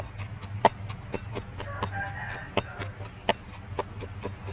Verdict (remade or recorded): recorded